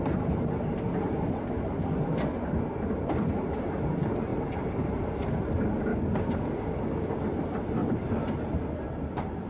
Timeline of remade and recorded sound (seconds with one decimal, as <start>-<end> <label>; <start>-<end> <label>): 0.0-5.9 recorded; 5.9-7.2 remade; 7.2-9.5 recorded